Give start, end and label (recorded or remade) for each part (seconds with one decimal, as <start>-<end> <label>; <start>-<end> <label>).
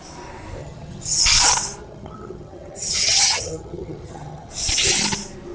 0.0-0.6 recorded; 0.6-1.2 remade; 1.2-1.8 recorded; 1.8-4.5 remade; 4.5-5.5 recorded